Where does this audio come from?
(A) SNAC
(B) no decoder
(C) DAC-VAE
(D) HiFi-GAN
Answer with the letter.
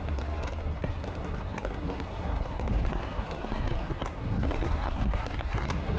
A